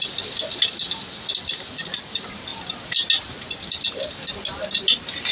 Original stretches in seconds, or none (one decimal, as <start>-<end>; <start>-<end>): 0.0-5.3